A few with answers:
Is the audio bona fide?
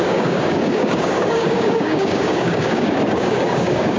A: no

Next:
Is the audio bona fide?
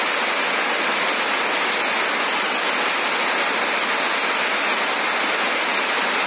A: yes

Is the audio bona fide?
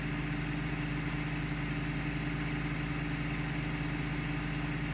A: yes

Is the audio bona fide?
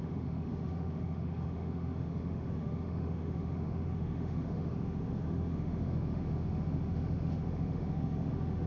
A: no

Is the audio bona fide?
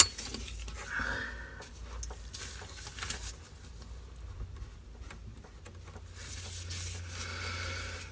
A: yes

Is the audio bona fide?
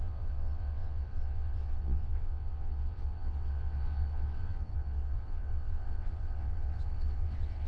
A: no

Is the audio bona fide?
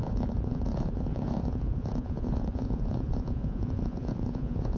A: no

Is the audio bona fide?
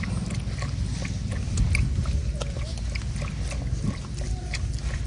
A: yes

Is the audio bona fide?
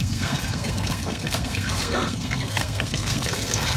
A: no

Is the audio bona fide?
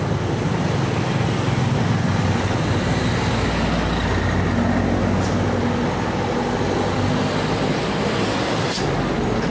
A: yes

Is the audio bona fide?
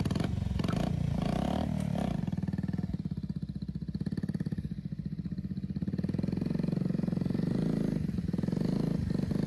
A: yes